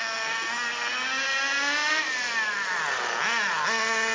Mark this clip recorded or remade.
recorded